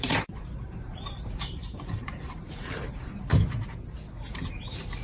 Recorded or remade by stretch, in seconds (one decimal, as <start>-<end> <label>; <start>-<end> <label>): 0.0-3.3 remade; 3.3-4.3 recorded; 4.3-5.0 remade

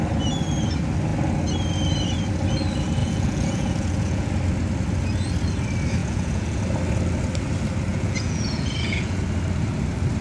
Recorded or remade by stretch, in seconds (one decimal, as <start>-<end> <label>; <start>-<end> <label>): 0.0-3.0 recorded; 3.0-4.3 remade; 4.3-6.0 recorded; 6.0-6.6 remade; 6.6-7.9 recorded; 7.9-9.2 remade; 9.2-10.2 recorded

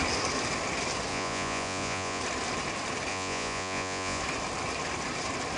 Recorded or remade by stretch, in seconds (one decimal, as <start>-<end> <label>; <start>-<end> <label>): 0.0-1.1 recorded; 1.1-2.2 remade; 2.2-3.1 recorded; 3.1-4.2 remade; 4.2-5.6 recorded

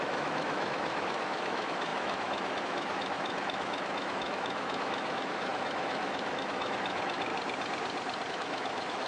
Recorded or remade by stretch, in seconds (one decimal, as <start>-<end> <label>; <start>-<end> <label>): 0.0-7.3 remade; 7.3-8.3 recorded; 8.3-9.1 remade